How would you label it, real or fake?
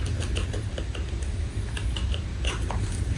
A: real